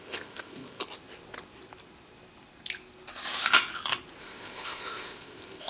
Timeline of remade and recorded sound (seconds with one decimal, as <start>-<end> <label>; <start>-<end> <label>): 0.0-0.8 remade; 0.8-4.2 recorded; 4.2-5.7 remade